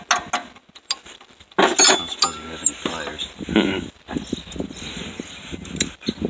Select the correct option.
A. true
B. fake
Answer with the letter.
A